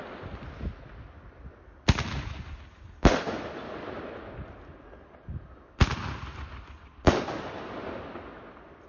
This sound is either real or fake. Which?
real